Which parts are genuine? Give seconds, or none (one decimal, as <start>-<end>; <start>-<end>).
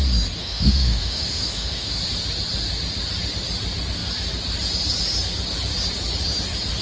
0.0-0.4; 2.0-6.8